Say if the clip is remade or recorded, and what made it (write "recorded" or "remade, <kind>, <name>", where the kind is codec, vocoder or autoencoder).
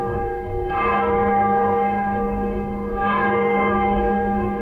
remade, codec, DAC